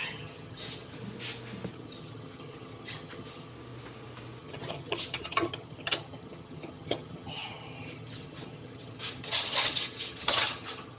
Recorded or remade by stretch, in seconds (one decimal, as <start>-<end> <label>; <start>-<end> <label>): 0.0-1.0 remade; 1.0-1.7 recorded; 1.7-3.5 remade; 3.5-4.4 recorded; 4.4-11.0 remade